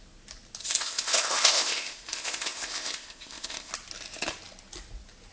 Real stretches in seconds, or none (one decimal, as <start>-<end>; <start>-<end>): 0.0-0.6; 3.7-5.3